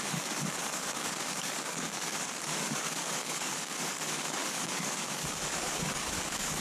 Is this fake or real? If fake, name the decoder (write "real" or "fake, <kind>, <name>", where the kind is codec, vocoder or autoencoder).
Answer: fake, codec, DAC